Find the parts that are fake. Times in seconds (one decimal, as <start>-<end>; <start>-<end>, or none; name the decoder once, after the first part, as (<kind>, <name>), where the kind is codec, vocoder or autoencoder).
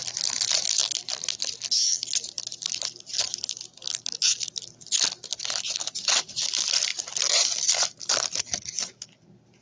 6.9-8.4 (vocoder, BigVGAN v2)